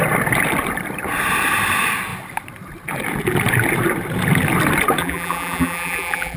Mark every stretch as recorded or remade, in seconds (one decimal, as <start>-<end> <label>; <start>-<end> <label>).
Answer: 0.0-5.0 recorded; 5.0-6.4 remade